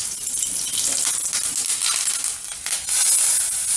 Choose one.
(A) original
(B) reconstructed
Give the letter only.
A